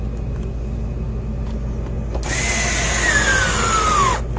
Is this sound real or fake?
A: real